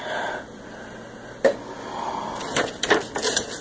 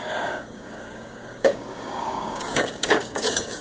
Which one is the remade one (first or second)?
second